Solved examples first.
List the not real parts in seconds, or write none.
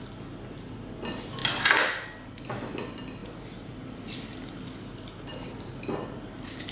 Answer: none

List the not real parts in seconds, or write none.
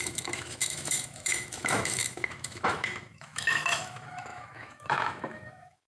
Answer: 0.0-5.9 (autoencoder, DAC-VAE)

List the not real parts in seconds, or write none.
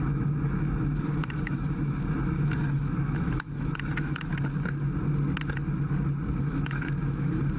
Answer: 0.0-4.3 (autoencoder, DAC-VAE); 6.4-7.6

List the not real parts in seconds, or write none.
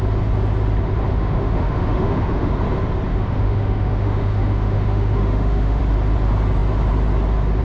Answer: 1.1-2.5 (autoencoder, DAC-VAE); 3.1-5.8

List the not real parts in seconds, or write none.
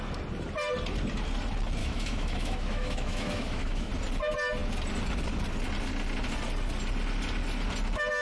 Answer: 1.8-3.9 (autoencoder, DAC-VAE)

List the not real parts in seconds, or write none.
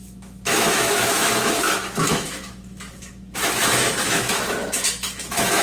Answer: 0.0-5.6 (autoencoder, DAC-VAE)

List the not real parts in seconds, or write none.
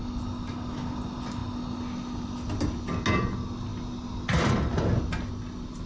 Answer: none